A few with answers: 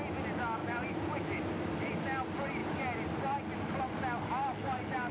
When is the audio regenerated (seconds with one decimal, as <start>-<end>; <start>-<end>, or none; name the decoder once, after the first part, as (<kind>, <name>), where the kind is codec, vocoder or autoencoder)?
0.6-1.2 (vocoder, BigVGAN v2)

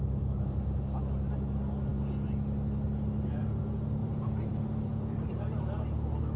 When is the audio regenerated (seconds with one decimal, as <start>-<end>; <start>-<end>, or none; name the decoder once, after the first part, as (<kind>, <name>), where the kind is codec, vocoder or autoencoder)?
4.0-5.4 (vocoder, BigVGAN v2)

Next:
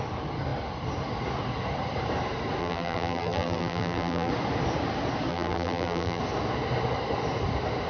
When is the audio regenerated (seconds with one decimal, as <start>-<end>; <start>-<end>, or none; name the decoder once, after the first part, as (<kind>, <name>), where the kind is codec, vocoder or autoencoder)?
2.6-4.3 (vocoder, BigVGAN v2); 5.3-6.2

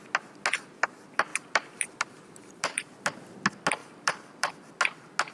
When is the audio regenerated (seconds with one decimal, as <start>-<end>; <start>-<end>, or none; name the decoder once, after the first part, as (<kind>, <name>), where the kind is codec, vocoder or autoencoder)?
1.3-3.0 (vocoder, BigVGAN v2); 3.8-4.5